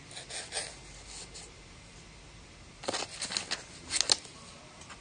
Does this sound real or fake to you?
real